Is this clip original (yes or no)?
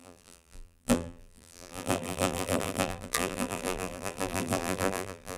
no